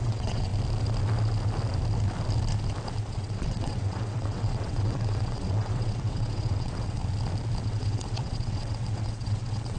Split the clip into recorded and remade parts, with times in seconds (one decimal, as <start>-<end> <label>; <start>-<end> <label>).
0.0-0.5 remade; 0.5-3.0 recorded; 3.0-7.0 remade; 7.0-7.6 recorded; 7.6-9.8 remade